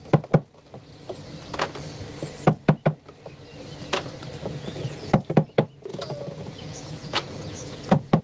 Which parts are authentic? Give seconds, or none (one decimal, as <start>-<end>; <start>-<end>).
0.0-4.4; 5.0-5.9